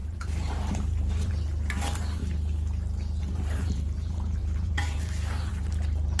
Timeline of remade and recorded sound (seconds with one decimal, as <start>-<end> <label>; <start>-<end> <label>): 0.0-2.2 remade; 2.2-3.2 recorded; 3.2-6.2 remade